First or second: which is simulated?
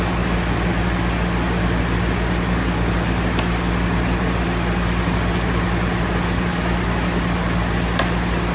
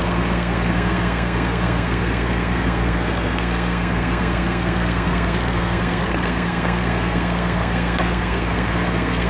second